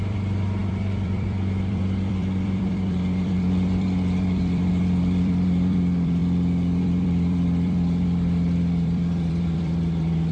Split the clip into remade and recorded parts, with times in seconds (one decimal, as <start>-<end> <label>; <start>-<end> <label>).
0.0-6.2 remade; 6.2-6.8 recorded; 6.8-10.3 remade